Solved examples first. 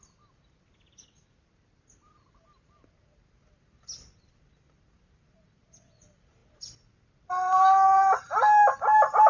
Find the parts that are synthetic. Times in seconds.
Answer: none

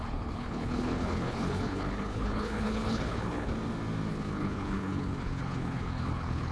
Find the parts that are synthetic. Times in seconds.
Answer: 0.0-3.5 (codec, HILCodec); 4.1-6.5